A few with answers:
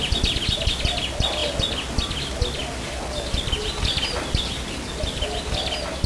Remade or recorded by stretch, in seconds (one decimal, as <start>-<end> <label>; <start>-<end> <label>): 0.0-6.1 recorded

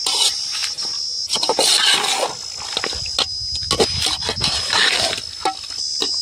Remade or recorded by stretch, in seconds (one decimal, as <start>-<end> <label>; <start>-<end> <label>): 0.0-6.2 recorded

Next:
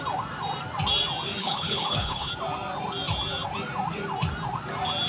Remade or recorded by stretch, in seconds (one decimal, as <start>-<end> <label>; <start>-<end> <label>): 0.0-1.4 recorded; 1.4-2.3 remade; 2.3-5.1 recorded

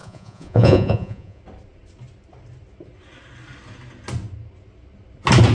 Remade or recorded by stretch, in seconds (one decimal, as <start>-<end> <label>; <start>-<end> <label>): 0.0-1.4 remade; 1.4-5.5 recorded

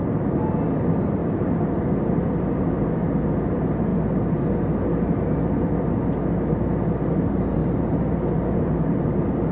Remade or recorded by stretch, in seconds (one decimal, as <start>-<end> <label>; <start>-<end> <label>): 0.0-9.5 recorded

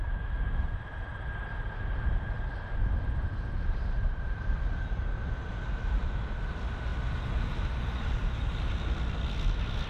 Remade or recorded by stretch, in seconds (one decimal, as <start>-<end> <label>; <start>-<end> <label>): 0.0-1.1 recorded; 1.1-5.0 remade; 5.0-9.9 recorded

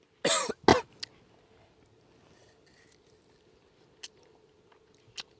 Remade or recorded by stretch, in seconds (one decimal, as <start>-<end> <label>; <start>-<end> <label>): 0.0-5.4 recorded